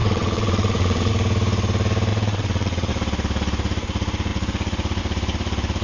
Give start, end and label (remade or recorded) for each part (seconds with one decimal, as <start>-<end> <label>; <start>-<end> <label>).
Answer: 0.0-1.1 remade; 1.1-2.1 recorded; 2.1-2.9 remade; 2.9-5.8 recorded